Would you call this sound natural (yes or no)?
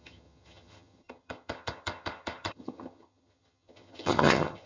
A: no